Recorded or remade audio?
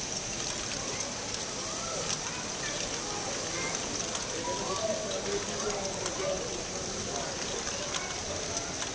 recorded